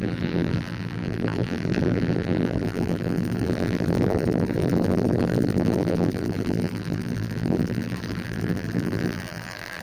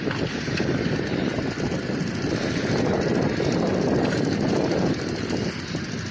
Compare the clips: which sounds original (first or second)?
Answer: second